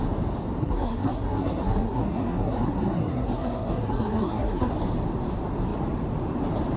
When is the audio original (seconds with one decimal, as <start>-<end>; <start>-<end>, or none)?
0.0-0.6; 4.7-6.8